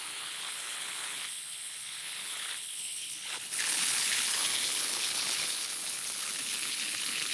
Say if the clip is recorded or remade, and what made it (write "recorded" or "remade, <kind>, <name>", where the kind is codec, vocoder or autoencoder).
remade, codec, HILCodec